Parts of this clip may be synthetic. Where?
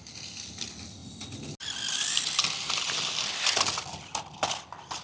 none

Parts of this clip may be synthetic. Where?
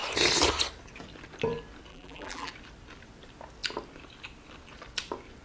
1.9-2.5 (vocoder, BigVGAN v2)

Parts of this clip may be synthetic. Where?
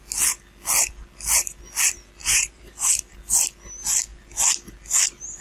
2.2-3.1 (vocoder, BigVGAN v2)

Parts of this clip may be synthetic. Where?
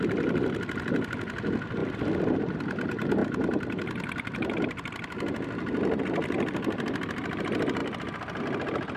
none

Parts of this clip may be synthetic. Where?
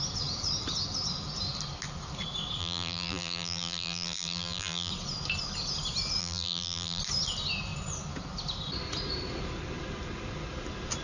2.6-4.9 (vocoder, BigVGAN v2); 6.2-7.0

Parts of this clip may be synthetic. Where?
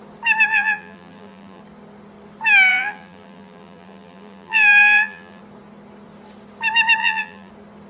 0.5-1.6 (vocoder, BigVGAN v2); 2.7-5.4; 7.0-7.5